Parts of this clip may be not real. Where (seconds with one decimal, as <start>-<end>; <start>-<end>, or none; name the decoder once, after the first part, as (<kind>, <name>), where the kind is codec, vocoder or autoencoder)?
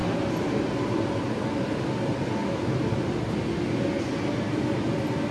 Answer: none